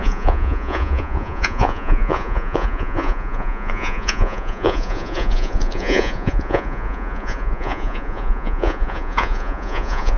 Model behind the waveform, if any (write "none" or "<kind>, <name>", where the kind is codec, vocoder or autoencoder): vocoder, Vocos